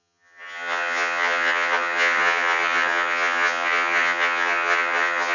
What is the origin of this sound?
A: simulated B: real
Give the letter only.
A